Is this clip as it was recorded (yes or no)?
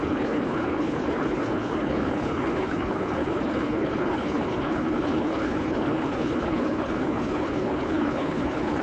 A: no